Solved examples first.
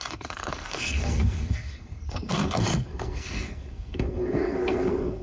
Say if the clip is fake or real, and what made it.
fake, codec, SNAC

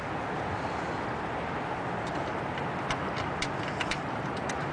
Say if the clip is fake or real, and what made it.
real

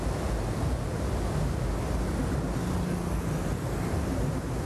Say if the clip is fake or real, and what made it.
real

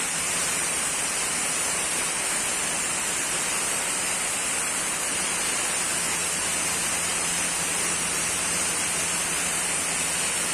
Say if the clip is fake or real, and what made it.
real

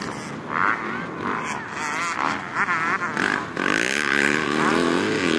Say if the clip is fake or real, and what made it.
real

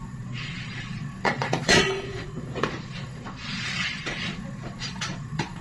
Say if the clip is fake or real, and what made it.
fake, vocoder, Vocos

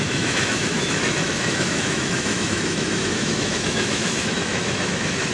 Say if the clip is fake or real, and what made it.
fake, autoencoder, DAC-VAE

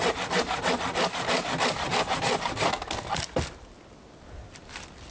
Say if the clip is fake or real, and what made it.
real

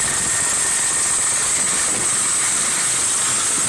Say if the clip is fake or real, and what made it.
real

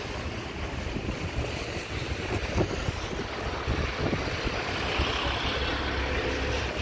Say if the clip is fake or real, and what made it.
real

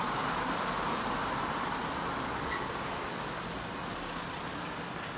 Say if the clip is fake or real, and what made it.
real